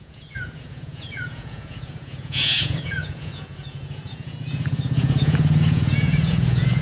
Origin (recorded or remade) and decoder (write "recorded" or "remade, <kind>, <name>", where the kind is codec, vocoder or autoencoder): remade, vocoder, Vocos